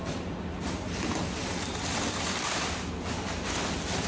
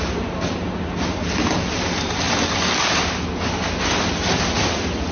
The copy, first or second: first